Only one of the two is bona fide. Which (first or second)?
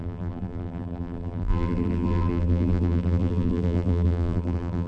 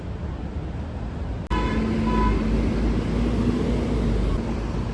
second